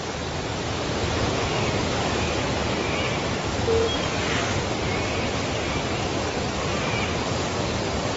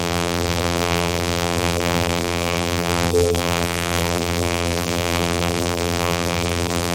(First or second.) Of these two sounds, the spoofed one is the second